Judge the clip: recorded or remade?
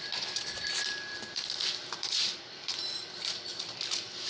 remade